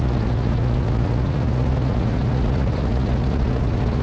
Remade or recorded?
remade